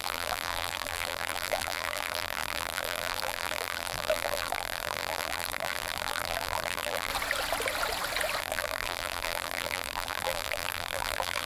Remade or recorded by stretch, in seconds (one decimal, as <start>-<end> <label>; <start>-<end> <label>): 0.0-7.1 remade; 7.1-8.4 recorded; 8.4-11.4 remade